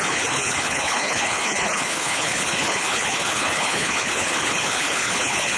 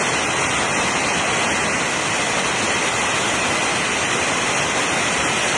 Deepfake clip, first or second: first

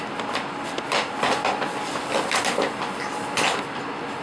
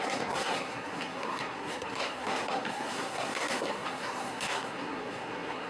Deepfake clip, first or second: second